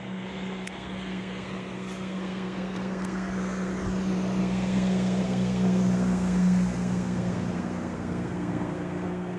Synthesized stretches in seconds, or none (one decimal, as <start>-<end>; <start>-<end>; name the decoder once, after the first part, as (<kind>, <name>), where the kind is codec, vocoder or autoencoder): 0.0-3.7 (codec, SNAC); 4.4-9.4